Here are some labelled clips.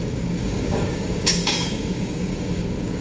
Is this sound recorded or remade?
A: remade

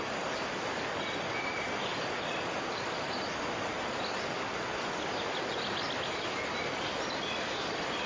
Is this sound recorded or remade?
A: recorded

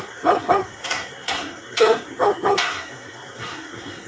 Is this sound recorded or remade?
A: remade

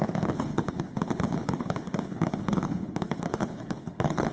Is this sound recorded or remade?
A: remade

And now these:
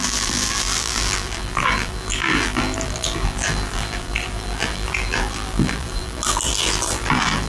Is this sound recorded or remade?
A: remade